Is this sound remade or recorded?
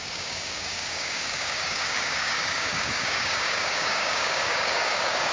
remade